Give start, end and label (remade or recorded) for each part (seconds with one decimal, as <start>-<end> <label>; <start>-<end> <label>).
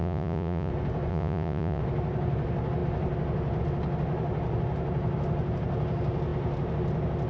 0.0-0.7 remade; 0.7-1.1 recorded; 1.1-1.8 remade; 1.8-7.3 recorded